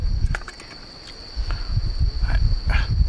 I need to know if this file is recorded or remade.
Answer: recorded